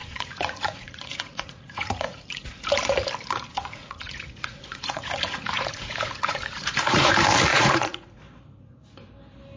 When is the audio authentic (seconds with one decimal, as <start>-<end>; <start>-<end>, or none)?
2.5-3.5; 7.1-7.5; 8.2-9.6